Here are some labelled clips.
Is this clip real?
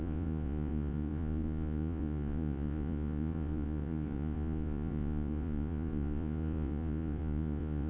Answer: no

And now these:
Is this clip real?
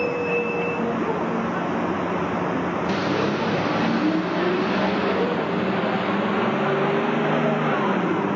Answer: yes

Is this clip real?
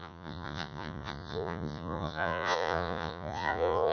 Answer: no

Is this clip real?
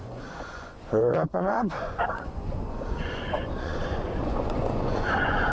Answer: no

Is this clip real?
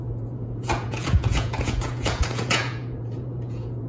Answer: no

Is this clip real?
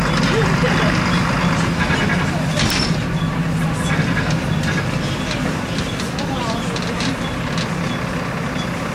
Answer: yes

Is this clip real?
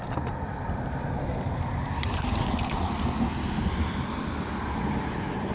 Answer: yes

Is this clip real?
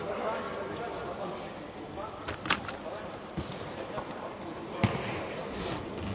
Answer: yes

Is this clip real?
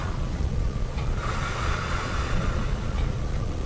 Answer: no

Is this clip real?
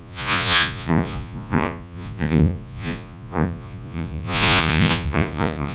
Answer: no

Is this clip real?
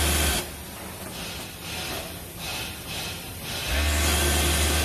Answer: yes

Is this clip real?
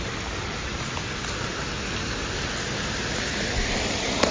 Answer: yes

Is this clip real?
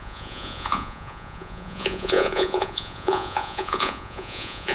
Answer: no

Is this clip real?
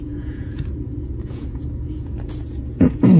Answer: no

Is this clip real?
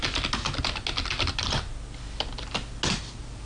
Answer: yes